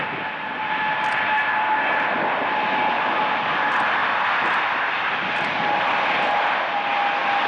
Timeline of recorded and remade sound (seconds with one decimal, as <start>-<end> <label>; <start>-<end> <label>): 0.0-7.5 recorded